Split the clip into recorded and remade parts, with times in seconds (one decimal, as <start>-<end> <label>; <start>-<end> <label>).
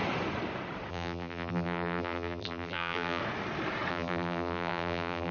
0.0-0.9 recorded; 0.9-3.2 remade; 3.2-3.9 recorded; 3.9-5.3 remade